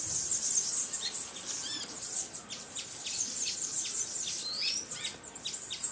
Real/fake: real